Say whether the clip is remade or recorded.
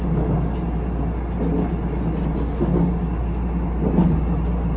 recorded